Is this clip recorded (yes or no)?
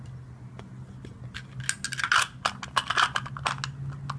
yes